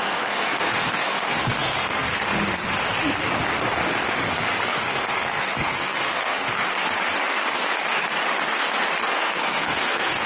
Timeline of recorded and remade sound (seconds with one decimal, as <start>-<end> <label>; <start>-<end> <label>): 0.0-2.3 remade; 2.3-4.7 recorded; 4.7-6.6 remade; 6.6-9.0 recorded; 9.0-10.3 remade